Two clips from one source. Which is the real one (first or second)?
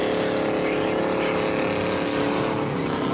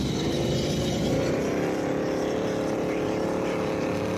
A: first